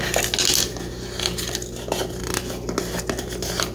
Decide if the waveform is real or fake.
real